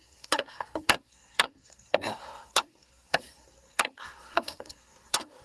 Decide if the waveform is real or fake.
fake